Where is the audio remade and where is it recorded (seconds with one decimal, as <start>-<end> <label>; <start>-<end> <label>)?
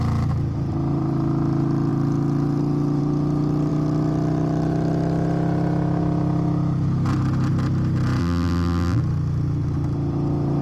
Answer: 0.0-8.2 recorded; 8.2-9.0 remade; 9.0-10.6 recorded